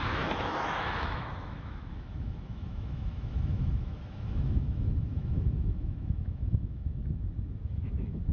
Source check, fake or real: fake